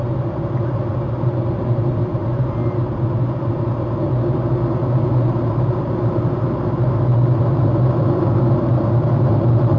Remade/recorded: recorded